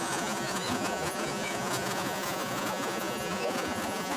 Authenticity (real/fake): fake